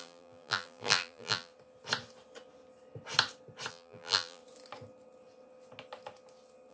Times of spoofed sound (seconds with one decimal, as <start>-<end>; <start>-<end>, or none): 0.0-1.5; 3.7-4.4